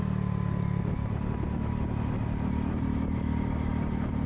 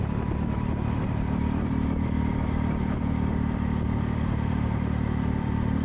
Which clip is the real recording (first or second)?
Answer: first